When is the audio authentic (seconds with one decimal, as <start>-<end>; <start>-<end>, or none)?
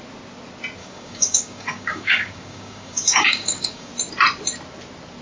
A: 0.0-0.8; 3.9-5.2